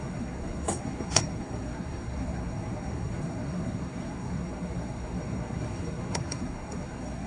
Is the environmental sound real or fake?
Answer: fake